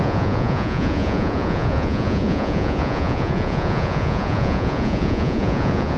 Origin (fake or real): fake